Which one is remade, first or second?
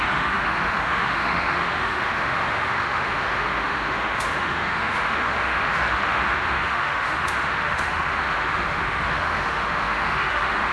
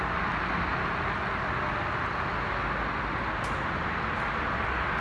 first